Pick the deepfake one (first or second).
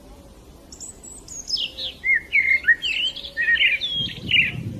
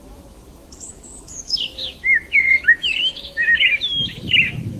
second